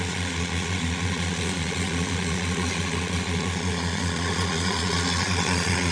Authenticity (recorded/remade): remade